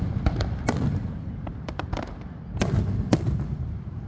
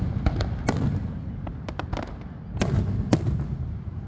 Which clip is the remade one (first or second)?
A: first